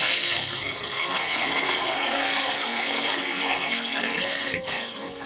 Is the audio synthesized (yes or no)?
yes